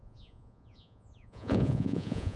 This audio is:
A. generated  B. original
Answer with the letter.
A